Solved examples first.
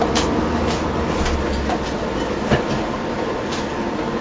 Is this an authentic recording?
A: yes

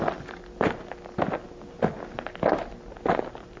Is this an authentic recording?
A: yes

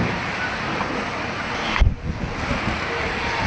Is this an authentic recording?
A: yes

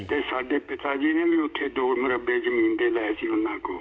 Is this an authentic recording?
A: no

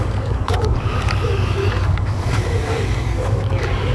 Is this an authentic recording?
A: no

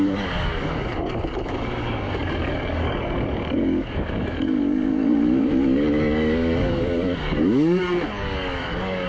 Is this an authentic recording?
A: no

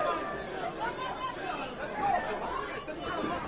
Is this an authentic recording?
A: yes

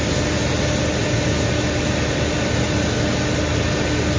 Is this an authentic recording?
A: yes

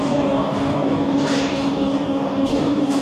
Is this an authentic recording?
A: no